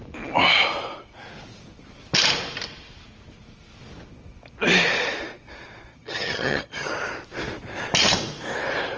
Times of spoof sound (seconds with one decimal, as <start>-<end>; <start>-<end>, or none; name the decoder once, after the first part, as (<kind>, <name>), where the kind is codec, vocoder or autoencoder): 5.9-6.9 (vocoder, HiFi-GAN)